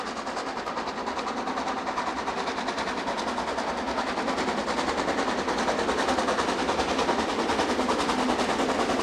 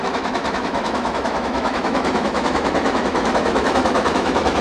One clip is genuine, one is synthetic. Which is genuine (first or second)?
first